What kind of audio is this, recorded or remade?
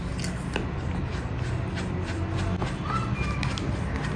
recorded